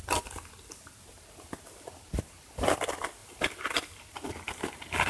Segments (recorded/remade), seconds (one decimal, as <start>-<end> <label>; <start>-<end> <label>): 0.0-5.1 recorded